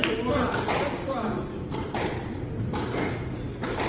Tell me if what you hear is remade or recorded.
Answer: recorded